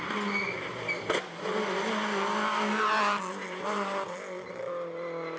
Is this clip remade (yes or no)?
no